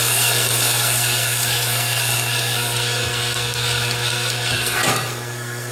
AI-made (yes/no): yes